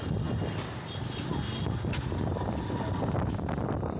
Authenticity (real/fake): real